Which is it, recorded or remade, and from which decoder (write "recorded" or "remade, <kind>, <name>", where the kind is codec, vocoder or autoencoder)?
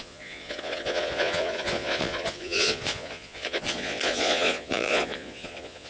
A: remade, vocoder, Vocos